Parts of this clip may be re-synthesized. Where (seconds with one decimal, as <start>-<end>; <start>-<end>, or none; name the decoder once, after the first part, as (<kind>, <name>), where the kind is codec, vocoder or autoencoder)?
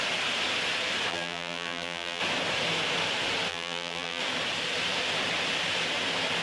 1.1-2.2 (vocoder, BigVGAN v2); 3.5-4.2